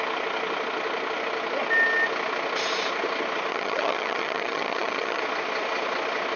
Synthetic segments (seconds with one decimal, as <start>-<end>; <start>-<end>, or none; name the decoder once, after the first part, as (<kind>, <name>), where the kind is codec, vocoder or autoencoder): 3.5-5.2 (vocoder, HiFi-GAN)